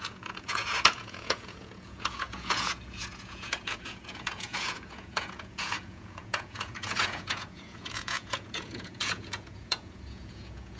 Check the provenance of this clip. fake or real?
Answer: fake